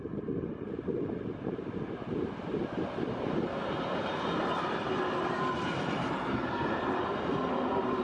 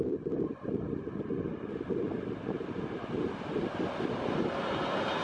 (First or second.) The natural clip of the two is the second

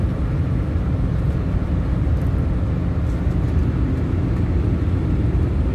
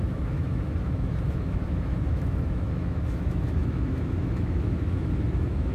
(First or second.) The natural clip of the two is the first